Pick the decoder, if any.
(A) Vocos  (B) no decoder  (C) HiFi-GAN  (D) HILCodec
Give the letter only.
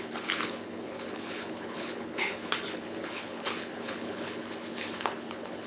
D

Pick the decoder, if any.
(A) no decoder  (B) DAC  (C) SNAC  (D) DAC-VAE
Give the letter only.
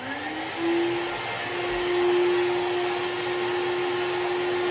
A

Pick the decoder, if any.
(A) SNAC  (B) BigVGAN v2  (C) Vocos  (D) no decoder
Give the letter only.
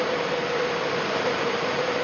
D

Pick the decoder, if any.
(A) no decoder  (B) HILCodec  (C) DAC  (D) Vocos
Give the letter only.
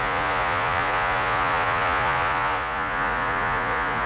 D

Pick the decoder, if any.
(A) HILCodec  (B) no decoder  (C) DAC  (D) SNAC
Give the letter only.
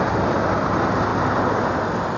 B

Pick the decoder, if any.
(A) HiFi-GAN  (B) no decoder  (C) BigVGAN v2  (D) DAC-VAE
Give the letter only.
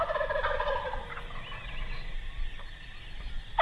B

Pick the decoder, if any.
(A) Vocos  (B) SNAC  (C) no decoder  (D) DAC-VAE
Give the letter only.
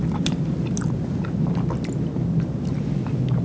C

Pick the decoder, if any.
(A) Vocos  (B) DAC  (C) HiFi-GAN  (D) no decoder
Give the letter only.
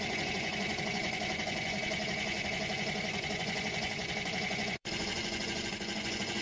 A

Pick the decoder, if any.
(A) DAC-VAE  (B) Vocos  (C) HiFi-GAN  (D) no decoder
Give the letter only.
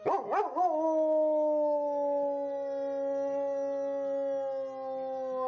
D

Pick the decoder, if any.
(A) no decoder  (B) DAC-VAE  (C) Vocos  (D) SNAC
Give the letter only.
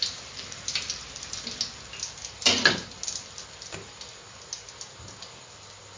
A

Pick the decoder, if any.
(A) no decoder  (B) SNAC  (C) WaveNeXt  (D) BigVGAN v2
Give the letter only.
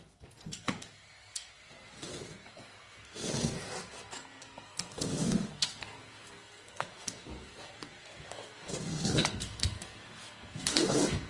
B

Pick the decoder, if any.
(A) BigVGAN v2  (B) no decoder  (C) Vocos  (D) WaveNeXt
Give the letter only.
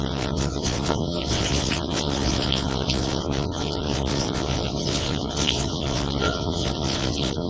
D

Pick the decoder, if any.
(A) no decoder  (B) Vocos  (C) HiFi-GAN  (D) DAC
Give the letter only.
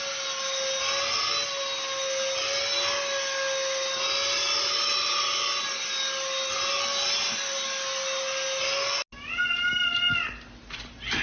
A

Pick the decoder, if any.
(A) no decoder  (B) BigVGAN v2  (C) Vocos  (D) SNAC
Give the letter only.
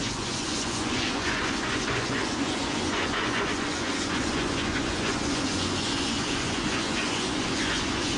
C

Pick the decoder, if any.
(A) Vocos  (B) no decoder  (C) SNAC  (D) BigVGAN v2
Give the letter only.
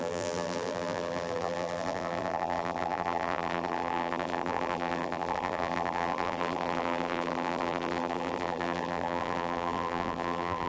D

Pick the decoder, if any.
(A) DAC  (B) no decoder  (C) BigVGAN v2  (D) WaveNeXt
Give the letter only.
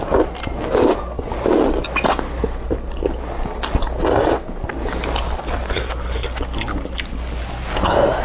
B